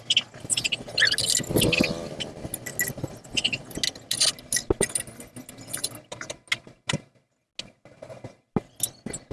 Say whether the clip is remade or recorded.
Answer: recorded